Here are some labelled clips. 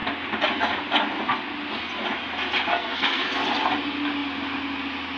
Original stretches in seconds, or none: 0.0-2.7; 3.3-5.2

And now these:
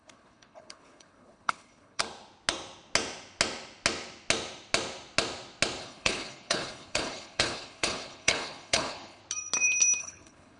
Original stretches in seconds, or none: 2.0-5.8; 9.2-10.0

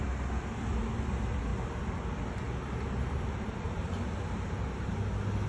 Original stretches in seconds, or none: 0.0-5.5

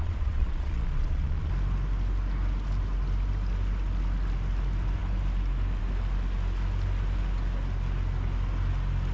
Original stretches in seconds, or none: 1.5-9.1